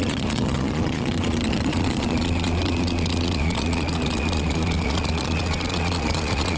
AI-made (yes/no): yes